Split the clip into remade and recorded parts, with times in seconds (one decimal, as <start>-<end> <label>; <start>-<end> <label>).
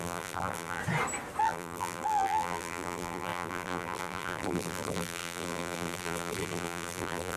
0.0-0.8 remade; 0.8-1.4 recorded; 1.4-7.4 remade